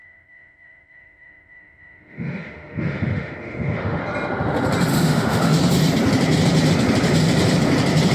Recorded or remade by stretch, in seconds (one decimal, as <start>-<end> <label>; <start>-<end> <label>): 0.0-4.0 remade; 4.0-4.9 recorded; 4.9-5.6 remade; 5.6-8.1 recorded